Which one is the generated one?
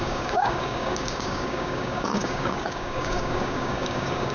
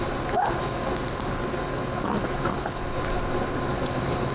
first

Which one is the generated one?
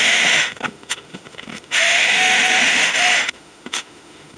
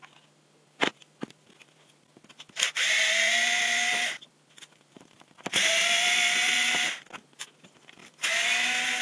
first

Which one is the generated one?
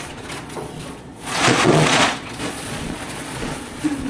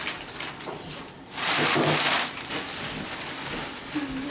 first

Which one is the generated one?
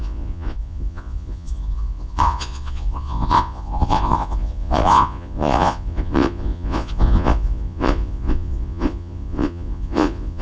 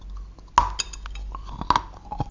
first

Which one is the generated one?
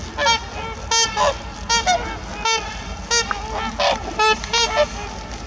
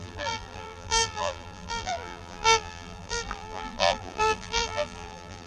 second